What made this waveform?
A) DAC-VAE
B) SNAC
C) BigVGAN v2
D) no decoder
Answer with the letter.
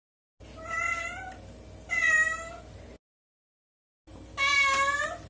D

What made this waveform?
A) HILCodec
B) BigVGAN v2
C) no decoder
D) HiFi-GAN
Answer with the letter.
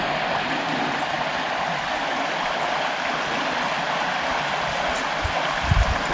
C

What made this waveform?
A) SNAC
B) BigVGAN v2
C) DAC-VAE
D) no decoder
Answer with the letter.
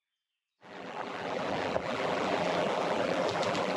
B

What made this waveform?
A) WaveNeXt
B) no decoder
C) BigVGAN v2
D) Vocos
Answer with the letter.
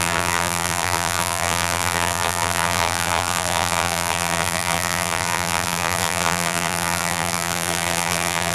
C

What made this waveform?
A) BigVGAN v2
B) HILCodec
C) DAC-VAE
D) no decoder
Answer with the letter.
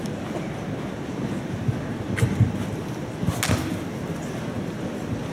D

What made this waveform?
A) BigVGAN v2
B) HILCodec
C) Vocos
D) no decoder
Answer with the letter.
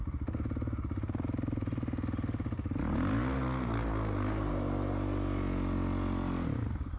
D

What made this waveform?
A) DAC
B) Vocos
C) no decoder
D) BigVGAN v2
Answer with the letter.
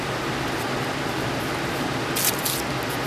C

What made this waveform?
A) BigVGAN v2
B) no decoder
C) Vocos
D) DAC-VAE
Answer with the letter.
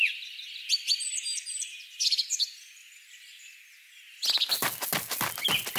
B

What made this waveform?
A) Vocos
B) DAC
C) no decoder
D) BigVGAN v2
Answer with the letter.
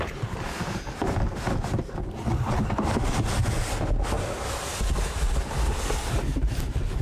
C